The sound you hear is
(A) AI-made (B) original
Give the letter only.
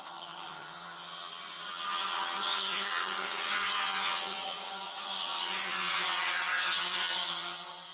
A